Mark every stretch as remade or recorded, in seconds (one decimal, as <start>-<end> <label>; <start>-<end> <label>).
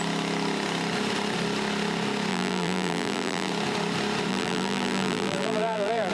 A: 0.0-2.3 recorded; 2.3-3.5 remade; 3.5-4.3 recorded; 4.3-6.1 remade